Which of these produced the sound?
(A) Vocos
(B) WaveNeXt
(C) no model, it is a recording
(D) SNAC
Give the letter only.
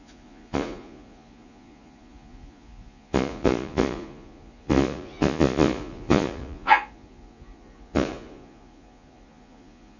A